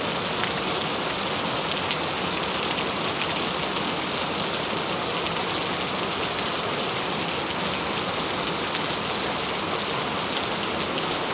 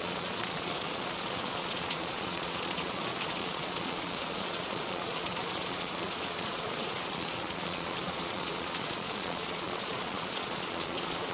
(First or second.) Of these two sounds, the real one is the first